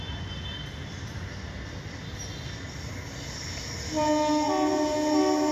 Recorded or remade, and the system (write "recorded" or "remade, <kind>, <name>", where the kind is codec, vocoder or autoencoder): recorded